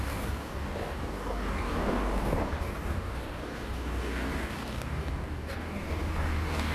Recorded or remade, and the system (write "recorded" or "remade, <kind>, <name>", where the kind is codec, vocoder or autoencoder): remade, codec, DAC